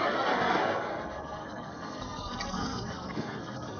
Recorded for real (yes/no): no